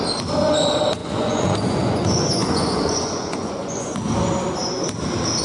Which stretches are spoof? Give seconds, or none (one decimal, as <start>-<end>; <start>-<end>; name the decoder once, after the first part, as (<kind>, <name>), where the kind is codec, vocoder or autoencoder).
1.0-3.9 (vocoder, Vocos)